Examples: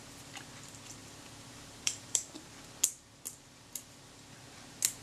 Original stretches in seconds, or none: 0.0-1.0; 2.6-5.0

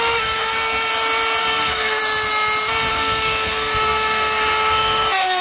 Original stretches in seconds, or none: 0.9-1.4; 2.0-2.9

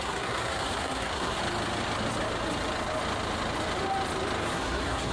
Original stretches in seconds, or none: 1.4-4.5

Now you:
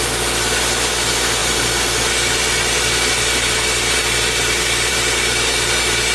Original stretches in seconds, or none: 0.0-6.1

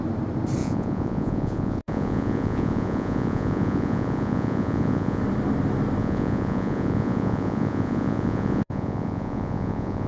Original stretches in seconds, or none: 0.0-0.6; 5.2-6.0

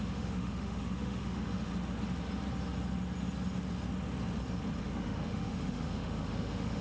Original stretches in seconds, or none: 1.7-4.8

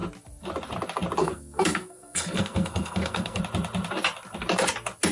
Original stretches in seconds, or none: 0.0-1.2; 3.4-5.1